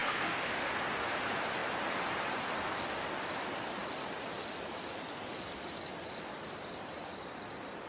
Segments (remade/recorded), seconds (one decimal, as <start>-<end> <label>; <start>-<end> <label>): 0.0-0.7 remade; 0.7-7.9 recorded